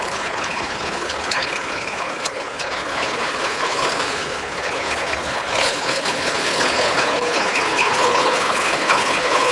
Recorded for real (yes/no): no